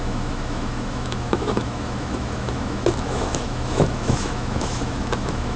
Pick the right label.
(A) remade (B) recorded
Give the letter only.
A